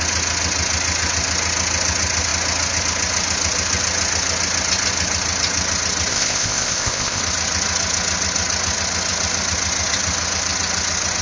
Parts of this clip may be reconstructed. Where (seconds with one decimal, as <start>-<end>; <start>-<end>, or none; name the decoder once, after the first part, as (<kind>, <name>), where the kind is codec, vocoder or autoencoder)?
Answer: 6.1-7.2 (codec, ZipCodec)